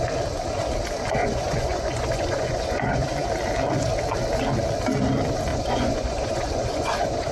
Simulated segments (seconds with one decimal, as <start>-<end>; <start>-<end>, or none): 1.2-3.3; 5.5-7.3